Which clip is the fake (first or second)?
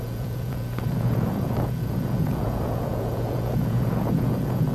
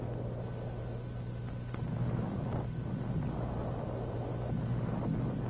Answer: first